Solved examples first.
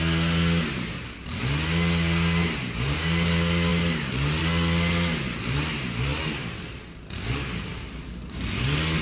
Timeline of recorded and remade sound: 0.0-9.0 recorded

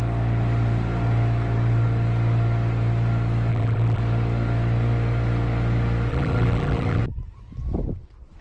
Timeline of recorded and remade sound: 0.0-3.5 recorded; 3.5-4.0 remade; 4.0-6.1 recorded; 6.1-7.0 remade; 7.0-8.4 recorded

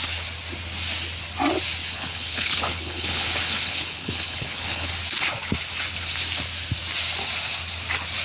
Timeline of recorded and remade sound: 0.0-1.8 recorded; 1.8-4.9 remade; 4.9-8.2 recorded

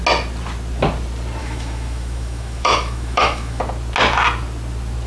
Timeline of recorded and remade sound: 0.0-1.4 recorded; 1.4-3.6 remade; 3.6-5.1 recorded

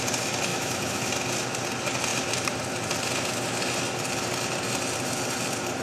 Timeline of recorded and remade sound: 0.0-0.5 recorded; 0.5-1.1 remade; 1.1-5.8 recorded